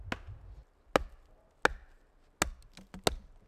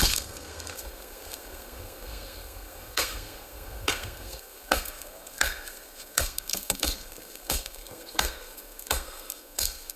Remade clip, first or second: second